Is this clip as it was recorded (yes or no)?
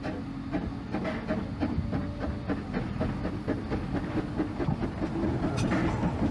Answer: yes